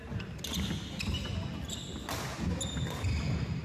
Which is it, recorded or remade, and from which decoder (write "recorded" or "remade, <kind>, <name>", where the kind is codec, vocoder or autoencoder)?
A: recorded